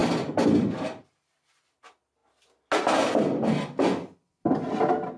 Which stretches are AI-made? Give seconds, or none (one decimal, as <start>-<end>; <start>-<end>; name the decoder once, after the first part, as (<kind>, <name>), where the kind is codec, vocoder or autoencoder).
none